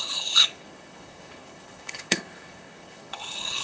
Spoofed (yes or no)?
yes